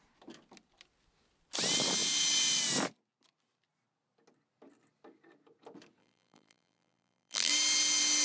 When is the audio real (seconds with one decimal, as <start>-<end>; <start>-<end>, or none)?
0.0-6.0; 7.5-8.2